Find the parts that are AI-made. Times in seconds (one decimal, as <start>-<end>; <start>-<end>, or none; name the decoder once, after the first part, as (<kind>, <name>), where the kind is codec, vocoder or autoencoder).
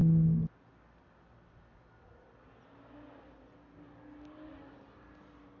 none